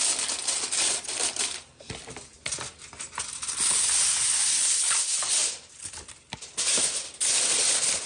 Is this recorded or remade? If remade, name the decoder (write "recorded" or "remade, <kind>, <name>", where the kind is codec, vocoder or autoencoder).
recorded